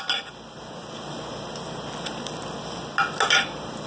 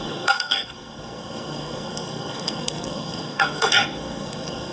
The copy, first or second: second